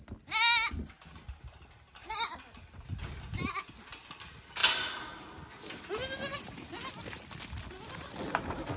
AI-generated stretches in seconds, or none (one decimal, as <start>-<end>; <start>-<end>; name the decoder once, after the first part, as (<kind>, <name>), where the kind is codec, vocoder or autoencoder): none